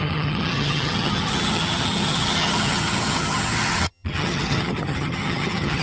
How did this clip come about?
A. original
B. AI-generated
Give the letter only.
B